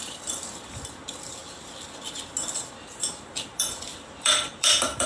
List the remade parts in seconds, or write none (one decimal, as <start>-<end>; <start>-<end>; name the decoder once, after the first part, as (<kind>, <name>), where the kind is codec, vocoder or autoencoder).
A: 0.0-1.4 (vocoder, BigVGAN v2); 3.4-5.1